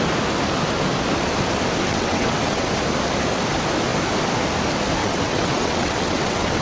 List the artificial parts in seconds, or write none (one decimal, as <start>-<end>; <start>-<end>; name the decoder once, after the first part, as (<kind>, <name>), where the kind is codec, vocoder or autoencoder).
1.9-2.7 (vocoder, WaveNeXt); 5.0-6.6